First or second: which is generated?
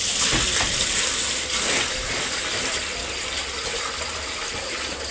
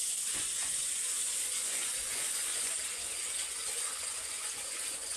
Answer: second